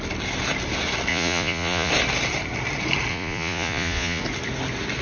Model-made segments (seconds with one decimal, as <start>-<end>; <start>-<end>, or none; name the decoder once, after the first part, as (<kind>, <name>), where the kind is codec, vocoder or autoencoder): 1.1-1.9 (vocoder, Vocos); 3.1-4.2

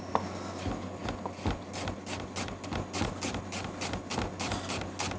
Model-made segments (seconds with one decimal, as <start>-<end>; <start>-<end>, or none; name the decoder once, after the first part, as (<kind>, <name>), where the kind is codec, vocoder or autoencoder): none

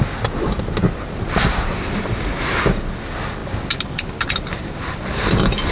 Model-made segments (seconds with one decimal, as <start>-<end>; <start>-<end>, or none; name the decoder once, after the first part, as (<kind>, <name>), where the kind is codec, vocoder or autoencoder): none

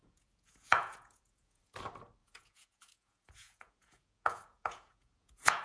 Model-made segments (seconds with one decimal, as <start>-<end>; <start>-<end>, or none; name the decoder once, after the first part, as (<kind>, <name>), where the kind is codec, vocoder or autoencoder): 0.0-1.6 (vocoder, Vocos); 2.2-5.6

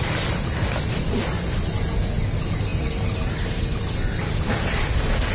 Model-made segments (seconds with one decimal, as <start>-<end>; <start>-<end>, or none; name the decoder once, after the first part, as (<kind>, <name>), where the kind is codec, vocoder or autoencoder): none

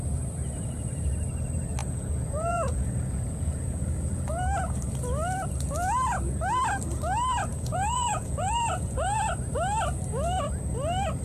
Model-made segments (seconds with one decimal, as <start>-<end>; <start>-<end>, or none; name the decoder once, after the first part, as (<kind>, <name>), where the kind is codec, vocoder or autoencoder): 1.8-4.3 (vocoder, Vocos); 7.5-9.3

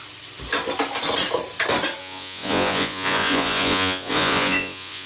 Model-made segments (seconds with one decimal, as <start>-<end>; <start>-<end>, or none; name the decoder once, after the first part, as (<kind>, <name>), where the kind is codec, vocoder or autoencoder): 2.0-5.1 (vocoder, Vocos)